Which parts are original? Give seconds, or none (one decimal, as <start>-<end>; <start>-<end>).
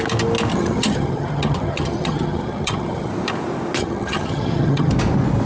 0.0-0.5; 3.1-3.8; 4.9-5.5